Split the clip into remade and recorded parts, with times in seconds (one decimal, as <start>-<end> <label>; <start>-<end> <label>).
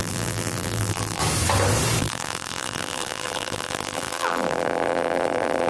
0.0-1.2 remade; 1.2-2.0 recorded; 2.0-5.7 remade